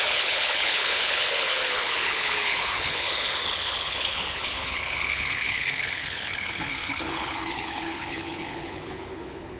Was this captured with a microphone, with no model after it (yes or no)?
no